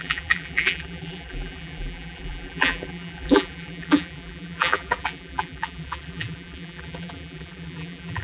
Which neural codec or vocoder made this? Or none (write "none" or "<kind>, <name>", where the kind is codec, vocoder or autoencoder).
vocoder, BigVGAN v2